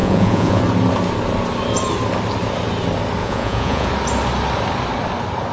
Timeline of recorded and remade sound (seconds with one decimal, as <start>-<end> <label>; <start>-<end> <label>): 0.0-0.6 remade; 0.6-3.2 recorded; 3.2-3.9 remade; 3.9-5.5 recorded